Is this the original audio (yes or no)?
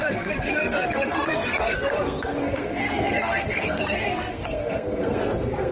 no